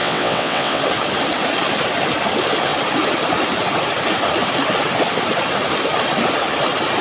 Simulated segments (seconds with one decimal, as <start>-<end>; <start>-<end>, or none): 0.0-0.8